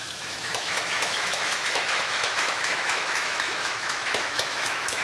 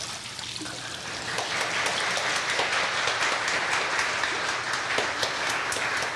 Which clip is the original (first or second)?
second